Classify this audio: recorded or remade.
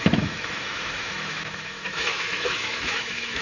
remade